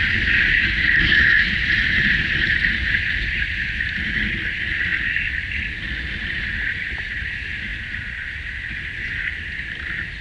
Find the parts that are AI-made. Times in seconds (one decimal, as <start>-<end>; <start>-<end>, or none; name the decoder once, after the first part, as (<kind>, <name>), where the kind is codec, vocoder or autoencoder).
none

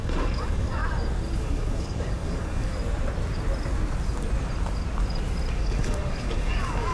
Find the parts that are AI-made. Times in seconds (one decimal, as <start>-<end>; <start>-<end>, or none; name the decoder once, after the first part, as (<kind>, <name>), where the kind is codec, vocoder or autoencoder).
0.0-0.8 (codec, DAC); 1.4-2.7; 5.5-6.9

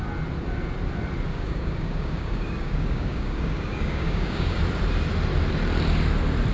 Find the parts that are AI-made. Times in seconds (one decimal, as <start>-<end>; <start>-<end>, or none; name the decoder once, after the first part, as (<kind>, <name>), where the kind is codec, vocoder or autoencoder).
1.3-4.6 (codec, DAC)